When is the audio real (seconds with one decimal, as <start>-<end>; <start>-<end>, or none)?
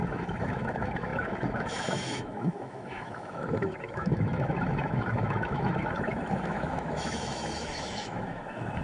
none